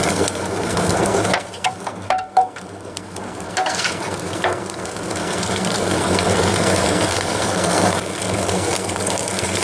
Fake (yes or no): yes